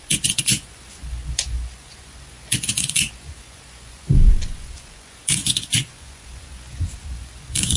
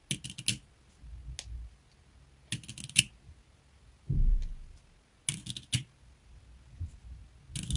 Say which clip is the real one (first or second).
second